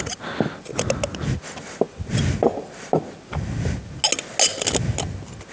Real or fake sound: real